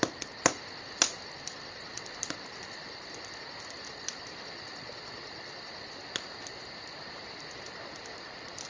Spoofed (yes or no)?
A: no